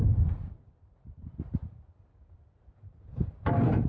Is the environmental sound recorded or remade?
remade